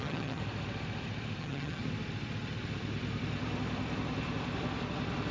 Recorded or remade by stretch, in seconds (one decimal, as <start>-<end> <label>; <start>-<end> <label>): 0.0-0.4 remade; 0.4-1.4 recorded; 1.4-1.8 remade; 1.8-5.3 recorded